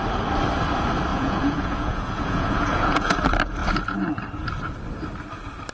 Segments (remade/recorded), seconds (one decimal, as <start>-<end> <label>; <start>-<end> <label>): 0.0-1.1 recorded; 1.1-3.1 remade; 3.1-5.7 recorded